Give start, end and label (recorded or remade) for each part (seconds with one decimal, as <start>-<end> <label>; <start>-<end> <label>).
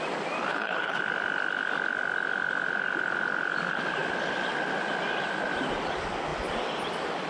0.0-0.5 recorded; 0.5-1.0 remade; 1.0-7.3 recorded